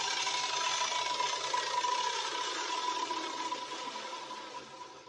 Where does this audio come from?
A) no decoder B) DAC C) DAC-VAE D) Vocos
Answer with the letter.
A